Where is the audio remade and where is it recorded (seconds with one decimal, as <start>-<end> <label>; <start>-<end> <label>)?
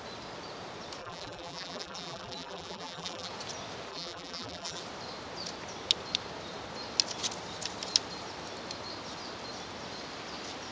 0.0-1.0 recorded; 1.0-3.3 remade; 3.3-3.9 recorded; 3.9-4.8 remade; 4.8-10.7 recorded